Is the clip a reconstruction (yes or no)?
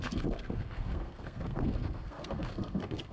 yes